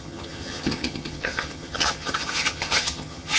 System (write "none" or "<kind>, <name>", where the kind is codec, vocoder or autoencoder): vocoder, HiFi-GAN